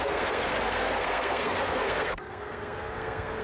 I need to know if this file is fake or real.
fake